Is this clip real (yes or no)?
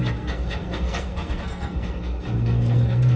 no